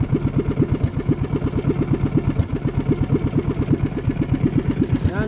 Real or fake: real